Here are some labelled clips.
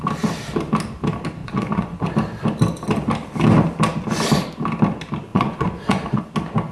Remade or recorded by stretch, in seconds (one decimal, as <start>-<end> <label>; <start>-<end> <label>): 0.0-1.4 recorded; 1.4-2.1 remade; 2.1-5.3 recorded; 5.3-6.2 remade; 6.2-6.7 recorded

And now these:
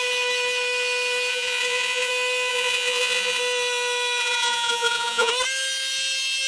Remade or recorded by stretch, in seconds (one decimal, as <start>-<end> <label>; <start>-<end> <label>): 0.0-1.3 recorded; 1.3-2.1 remade; 2.1-2.5 recorded; 2.5-3.4 remade; 3.4-4.2 recorded; 4.2-5.3 remade; 5.3-6.5 recorded

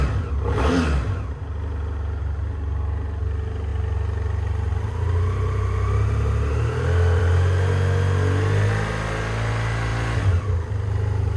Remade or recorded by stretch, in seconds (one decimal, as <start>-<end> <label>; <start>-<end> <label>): 0.0-11.4 recorded